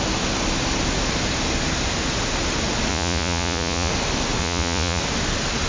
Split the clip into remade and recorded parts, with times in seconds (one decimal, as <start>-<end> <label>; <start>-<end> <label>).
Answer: 0.0-2.9 recorded; 2.9-3.9 remade; 3.9-4.4 recorded; 4.4-5.0 remade; 5.0-5.7 recorded